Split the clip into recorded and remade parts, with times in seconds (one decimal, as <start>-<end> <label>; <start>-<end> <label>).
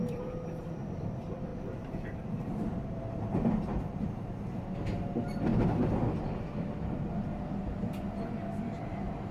0.0-5.5 remade; 5.5-8.8 recorded; 8.8-9.3 remade